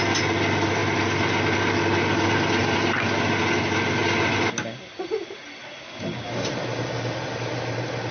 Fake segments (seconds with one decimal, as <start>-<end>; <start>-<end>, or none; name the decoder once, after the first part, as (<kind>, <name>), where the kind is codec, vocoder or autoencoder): none